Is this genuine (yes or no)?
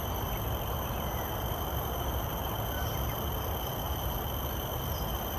yes